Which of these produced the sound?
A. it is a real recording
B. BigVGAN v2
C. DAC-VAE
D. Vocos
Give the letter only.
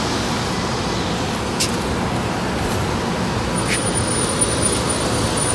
A